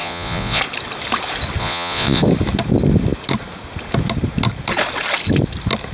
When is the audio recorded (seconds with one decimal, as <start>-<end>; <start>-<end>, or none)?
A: 0.6-1.6; 2.2-5.9